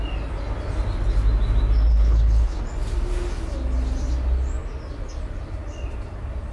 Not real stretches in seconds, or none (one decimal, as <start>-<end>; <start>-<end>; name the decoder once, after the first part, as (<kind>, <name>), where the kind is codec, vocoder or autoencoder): 1.9-2.6 (codec, HILCodec)